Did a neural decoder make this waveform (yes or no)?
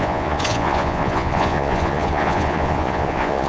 yes